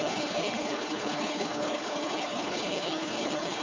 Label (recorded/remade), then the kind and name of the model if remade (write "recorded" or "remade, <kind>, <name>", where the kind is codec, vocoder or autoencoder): remade, codec, HILCodec